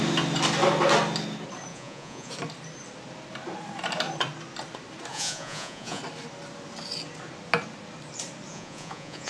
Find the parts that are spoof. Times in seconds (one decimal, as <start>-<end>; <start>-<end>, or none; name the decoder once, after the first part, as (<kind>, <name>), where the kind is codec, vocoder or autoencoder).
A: 1.7-2.3 (vocoder, Vocos); 5.1-6.0; 8.5-9.3

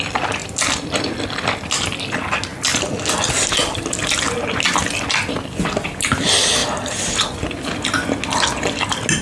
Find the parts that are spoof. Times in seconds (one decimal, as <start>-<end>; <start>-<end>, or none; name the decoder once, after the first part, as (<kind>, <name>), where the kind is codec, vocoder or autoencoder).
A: none

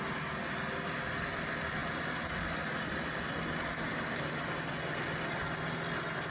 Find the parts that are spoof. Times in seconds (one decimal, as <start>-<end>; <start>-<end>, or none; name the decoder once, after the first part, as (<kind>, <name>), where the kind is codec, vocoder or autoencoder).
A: none

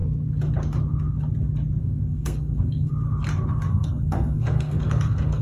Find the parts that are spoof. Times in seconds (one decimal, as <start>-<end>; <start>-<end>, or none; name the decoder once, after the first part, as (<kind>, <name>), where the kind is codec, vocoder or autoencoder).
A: 1.8-2.9 (codec, SNAC); 3.7-5.4

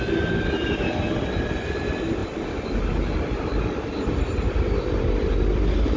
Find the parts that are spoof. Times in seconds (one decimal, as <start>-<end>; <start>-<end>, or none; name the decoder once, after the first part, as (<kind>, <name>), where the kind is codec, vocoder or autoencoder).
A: none

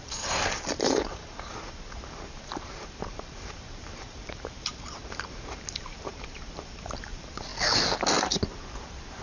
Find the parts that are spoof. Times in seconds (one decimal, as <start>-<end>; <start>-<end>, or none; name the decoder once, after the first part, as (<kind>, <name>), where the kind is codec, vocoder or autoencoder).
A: 0.0-7.5 (vocoder, BigVGAN v2); 8.5-9.2